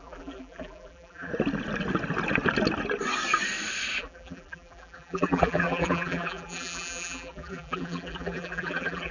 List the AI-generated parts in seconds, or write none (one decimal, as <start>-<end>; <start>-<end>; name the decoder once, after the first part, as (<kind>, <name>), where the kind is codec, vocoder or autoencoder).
0.0-1.3 (vocoder, BigVGAN v2); 4.0-9.1